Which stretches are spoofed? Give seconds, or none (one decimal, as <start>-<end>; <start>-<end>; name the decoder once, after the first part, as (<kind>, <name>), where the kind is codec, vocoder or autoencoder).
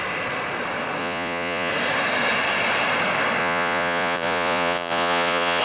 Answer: 1.0-1.7 (vocoder, Vocos); 3.4-5.6